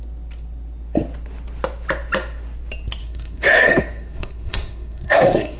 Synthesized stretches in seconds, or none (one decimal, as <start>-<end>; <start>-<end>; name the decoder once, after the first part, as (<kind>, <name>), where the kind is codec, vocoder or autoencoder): 3.0-5.6 (codec, SNAC)